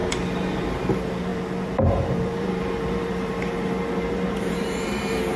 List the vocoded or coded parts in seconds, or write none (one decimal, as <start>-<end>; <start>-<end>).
0.0-5.4